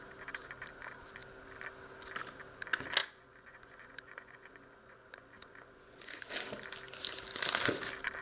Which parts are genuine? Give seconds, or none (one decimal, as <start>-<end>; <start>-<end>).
0.0-3.0; 6.3-8.2